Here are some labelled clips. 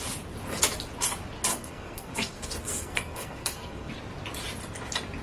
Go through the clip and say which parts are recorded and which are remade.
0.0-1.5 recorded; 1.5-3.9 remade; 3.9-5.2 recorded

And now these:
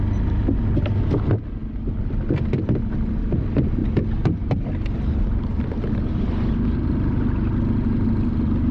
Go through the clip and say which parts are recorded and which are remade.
0.0-8.7 recorded

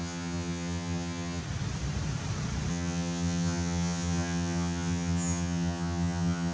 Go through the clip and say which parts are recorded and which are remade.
0.0-1.4 remade; 1.4-2.7 recorded; 2.7-6.5 remade

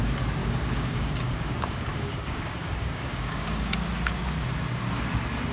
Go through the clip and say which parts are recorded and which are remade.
0.0-0.4 recorded; 0.4-3.7 remade; 3.7-5.5 recorded